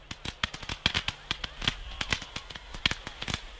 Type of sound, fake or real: real